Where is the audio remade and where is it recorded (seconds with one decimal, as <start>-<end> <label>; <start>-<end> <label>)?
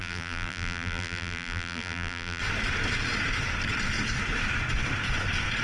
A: 0.0-2.4 remade; 2.4-5.6 recorded